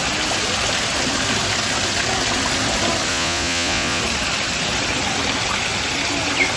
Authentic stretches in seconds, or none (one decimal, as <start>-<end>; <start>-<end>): 0.0-3.1; 4.0-6.6